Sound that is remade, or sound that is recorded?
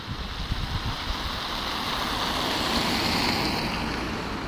recorded